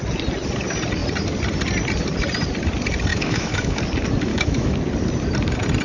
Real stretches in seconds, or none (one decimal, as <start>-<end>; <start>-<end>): 0.0-3.1; 3.8-4.3; 4.8-5.8